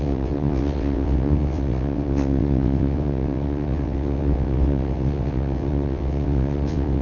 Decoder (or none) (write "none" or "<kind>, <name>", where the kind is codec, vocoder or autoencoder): vocoder, WaveNeXt